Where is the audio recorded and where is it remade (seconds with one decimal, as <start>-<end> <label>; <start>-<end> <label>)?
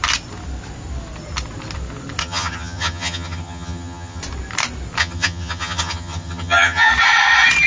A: 0.0-2.2 recorded; 2.2-4.2 remade; 4.2-5.0 recorded; 5.0-6.9 remade; 6.9-7.7 recorded